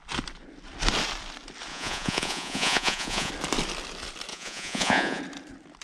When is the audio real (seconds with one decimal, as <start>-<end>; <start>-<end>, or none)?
0.0-1.7; 3.3-4.3; 5.2-5.8